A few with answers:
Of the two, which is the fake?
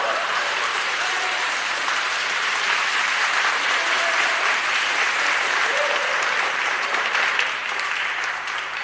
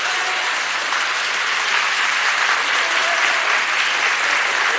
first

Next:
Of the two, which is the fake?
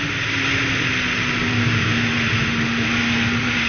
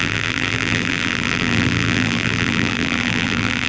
second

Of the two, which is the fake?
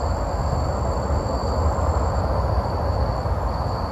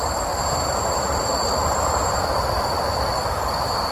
second